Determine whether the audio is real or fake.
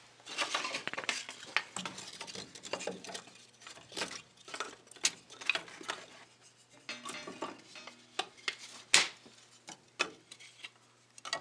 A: real